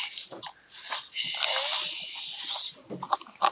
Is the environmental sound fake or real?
real